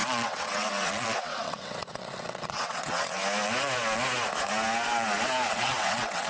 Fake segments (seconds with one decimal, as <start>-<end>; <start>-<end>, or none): 0.0-3.2; 5.5-6.3